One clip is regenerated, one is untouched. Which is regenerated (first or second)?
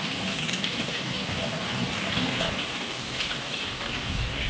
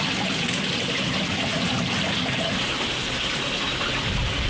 first